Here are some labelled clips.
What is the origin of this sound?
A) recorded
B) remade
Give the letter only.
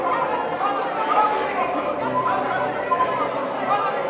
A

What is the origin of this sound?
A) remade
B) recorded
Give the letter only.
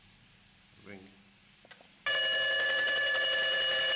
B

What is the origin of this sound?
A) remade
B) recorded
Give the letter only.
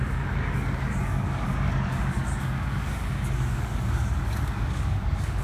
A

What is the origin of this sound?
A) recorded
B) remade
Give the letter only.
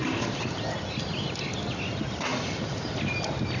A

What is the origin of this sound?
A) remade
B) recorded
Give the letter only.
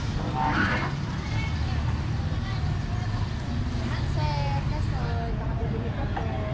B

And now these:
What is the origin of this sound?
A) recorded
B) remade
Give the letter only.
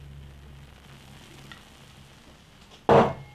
A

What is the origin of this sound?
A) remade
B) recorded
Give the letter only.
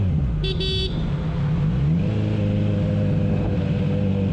B